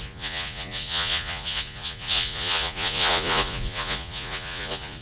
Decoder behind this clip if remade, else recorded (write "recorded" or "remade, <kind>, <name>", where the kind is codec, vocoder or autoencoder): remade, vocoder, Vocos